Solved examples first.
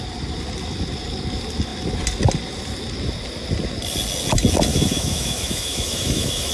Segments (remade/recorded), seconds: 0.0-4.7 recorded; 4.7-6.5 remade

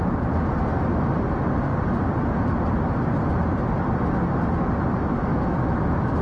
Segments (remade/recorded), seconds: 0.0-5.3 recorded; 5.3-6.2 remade

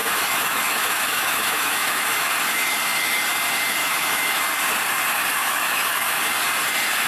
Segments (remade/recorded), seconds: 0.0-2.3 remade; 2.3-3.8 recorded; 3.8-4.4 remade; 4.4-5.4 recorded; 5.4-6.2 remade; 6.2-7.1 recorded